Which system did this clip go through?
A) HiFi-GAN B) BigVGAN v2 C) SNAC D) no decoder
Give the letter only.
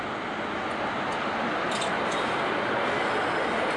D